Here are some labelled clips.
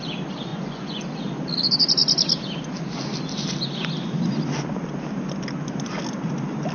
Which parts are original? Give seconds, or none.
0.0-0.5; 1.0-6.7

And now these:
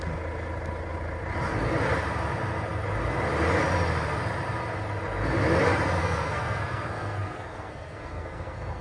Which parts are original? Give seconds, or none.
0.0-6.0

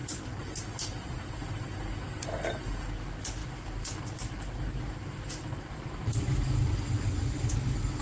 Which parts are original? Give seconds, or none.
0.0-8.0